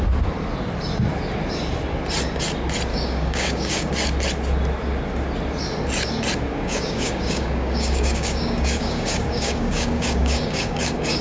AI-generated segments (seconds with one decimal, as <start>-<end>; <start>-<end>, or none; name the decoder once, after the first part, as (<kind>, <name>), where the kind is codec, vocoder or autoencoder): 2.9-3.9 (codec, DAC); 6.5-11.2

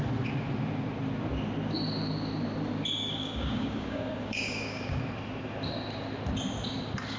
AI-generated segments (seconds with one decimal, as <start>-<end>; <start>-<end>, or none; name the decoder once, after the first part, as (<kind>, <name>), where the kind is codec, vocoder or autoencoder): 3.0-5.0 (codec, DAC)

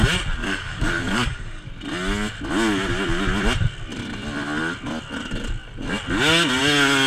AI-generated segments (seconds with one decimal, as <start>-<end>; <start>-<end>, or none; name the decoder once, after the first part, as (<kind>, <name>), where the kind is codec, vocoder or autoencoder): 0.4-1.7 (codec, DAC)